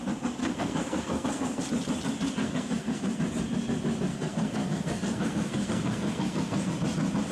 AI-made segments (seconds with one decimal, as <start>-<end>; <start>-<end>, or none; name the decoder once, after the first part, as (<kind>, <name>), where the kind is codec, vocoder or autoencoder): 0.4-1.6 (codec, SNAC); 2.4-3.2; 4.1-6.7